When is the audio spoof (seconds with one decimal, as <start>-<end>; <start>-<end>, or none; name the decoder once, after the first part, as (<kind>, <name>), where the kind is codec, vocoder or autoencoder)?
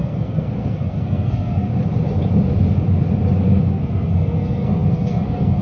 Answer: 0.0-1.7 (codec, SNAC); 3.6-5.6